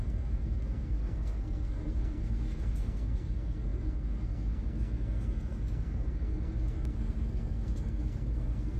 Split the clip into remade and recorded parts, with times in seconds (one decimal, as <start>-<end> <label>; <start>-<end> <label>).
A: 0.0-8.8 remade